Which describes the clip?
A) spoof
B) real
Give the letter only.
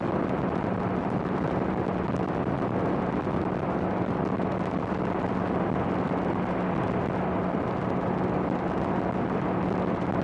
B